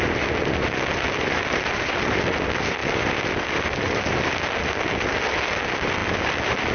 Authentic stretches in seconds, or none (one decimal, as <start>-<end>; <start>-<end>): 0.0-6.7